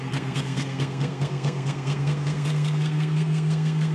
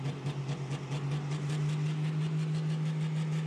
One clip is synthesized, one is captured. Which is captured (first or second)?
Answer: second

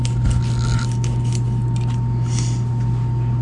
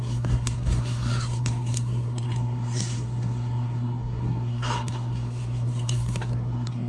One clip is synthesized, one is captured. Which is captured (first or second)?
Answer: first